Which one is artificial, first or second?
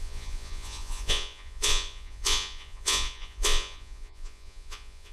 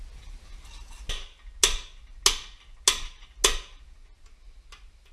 first